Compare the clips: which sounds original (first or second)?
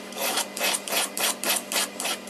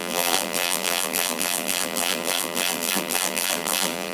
first